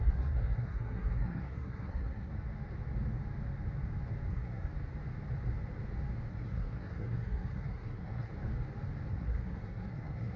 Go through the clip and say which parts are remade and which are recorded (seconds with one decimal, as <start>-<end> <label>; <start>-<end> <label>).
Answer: 0.0-2.3 remade; 2.3-4.3 recorded; 4.3-4.7 remade; 4.7-6.3 recorded; 6.3-8.3 remade; 8.3-9.1 recorded; 9.1-10.4 remade